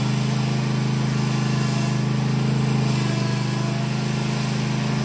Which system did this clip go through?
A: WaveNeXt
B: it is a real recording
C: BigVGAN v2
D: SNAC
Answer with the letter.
B